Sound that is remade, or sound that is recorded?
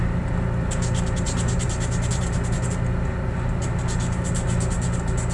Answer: recorded